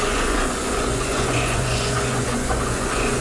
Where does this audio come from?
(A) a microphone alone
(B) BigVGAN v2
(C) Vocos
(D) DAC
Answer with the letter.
C